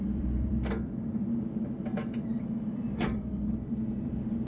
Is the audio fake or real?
fake